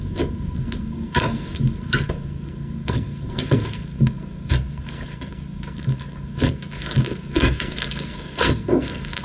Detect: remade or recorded remade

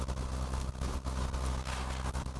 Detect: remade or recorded recorded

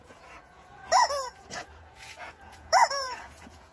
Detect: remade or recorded remade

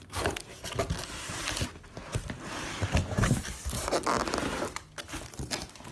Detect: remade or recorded recorded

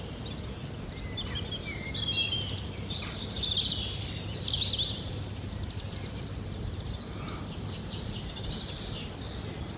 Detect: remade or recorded recorded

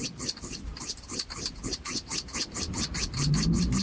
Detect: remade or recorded remade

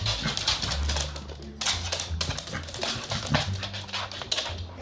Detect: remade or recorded recorded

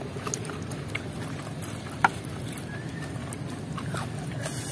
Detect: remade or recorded recorded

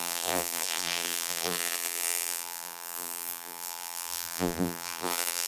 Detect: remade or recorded remade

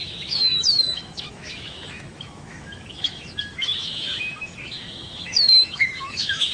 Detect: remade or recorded remade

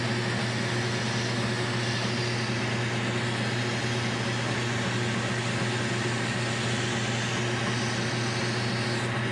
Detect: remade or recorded recorded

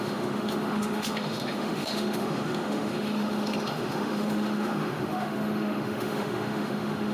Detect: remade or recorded remade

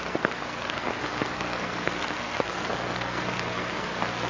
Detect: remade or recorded remade